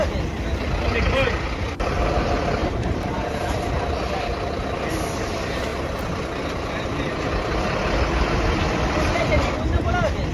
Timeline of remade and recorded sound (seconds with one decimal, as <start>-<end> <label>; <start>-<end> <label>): 0.0-2.6 recorded; 2.6-3.6 remade; 3.6-10.3 recorded

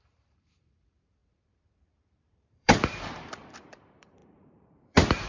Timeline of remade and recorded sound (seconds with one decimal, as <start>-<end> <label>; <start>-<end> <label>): 0.0-5.3 remade

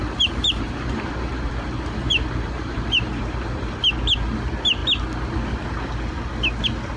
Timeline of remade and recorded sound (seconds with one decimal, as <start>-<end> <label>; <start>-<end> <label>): 0.0-3.8 remade; 3.8-7.0 recorded

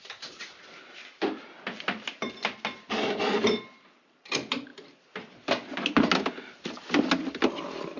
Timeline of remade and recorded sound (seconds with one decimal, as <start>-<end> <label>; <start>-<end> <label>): 0.0-8.0 recorded

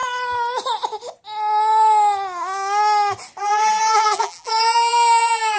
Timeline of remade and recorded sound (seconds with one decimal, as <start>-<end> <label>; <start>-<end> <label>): 0.0-3.4 recorded; 3.4-5.6 remade